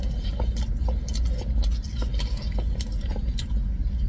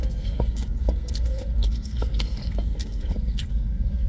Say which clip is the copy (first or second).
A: second